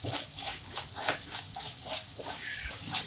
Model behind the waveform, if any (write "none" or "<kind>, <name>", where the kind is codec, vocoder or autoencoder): codec, DAC